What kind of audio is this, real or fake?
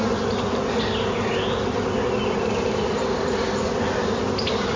real